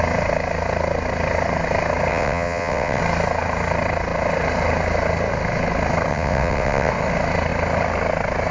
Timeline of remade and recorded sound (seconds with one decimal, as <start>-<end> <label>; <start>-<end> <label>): 0.0-2.1 recorded; 2.1-3.0 remade; 3.0-6.1 recorded; 6.1-6.9 remade; 6.9-8.5 recorded